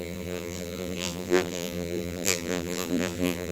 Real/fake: fake